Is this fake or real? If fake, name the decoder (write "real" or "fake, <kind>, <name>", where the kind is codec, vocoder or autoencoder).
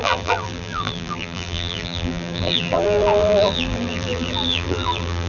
fake, vocoder, BigVGAN v2